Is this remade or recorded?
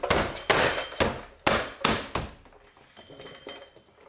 recorded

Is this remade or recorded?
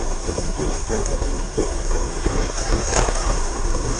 remade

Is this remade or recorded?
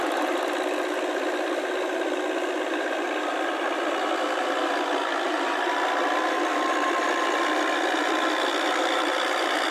recorded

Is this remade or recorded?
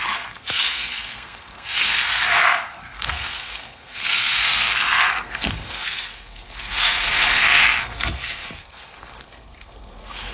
remade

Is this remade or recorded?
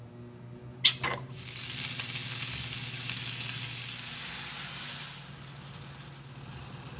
recorded